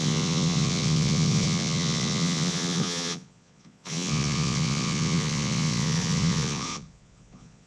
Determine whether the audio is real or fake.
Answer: fake